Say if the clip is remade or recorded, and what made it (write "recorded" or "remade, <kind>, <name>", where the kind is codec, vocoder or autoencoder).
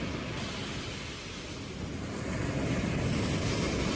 recorded